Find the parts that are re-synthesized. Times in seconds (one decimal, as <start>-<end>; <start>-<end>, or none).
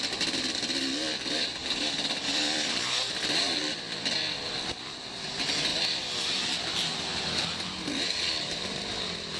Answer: 1.6-5.1; 5.7-9.0